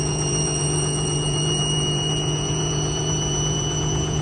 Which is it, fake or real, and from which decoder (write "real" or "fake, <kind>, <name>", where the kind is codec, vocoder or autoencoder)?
fake, vocoder, Vocos